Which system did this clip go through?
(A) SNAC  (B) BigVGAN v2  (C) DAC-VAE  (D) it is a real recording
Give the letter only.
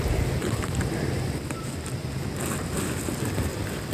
D